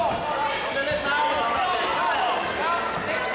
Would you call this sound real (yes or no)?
yes